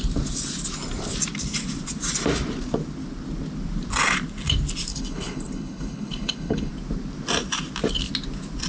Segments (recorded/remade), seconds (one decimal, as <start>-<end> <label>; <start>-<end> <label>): 0.0-4.9 recorded; 4.9-6.7 remade; 6.7-8.7 recorded